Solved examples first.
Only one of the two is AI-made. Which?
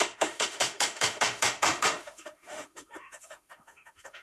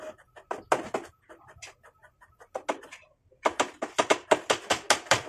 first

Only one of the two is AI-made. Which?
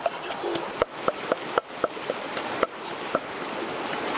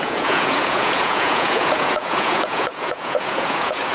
second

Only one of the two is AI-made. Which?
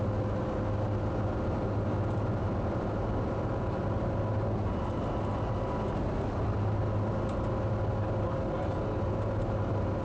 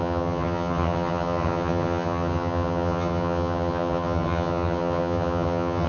second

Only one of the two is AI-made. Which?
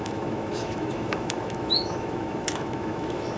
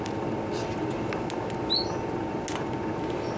first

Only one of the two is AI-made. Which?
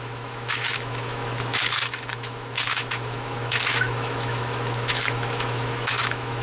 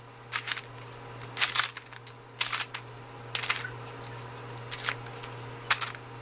first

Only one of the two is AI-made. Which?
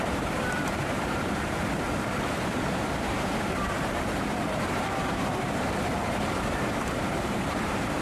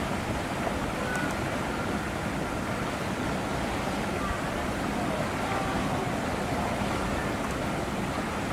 first